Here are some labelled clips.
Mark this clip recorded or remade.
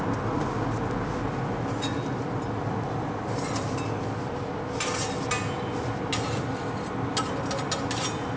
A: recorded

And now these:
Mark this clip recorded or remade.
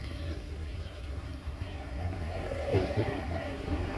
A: remade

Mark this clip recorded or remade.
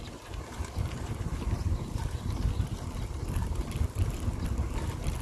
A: recorded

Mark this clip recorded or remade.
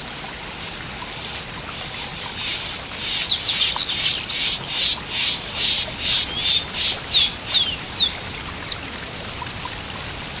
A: recorded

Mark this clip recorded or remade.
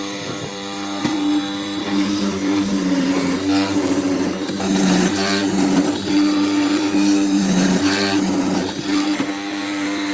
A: remade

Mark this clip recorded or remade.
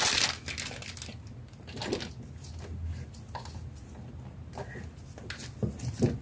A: recorded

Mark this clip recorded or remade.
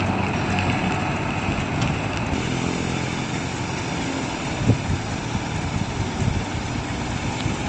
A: recorded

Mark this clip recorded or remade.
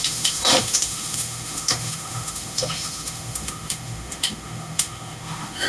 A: remade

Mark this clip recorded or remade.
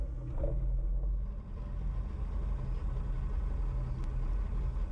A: recorded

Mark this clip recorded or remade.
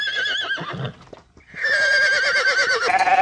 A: recorded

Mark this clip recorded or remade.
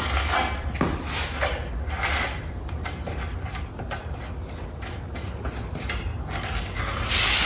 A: recorded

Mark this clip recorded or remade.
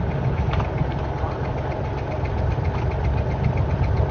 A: recorded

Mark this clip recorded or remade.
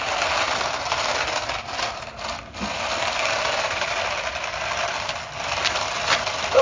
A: recorded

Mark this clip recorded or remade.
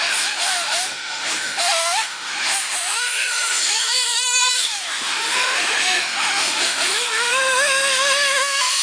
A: remade